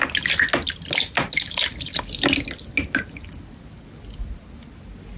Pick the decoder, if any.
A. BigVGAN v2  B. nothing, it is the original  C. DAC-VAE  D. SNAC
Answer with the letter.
B